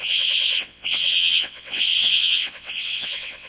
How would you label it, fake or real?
fake